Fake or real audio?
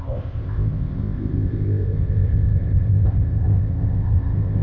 fake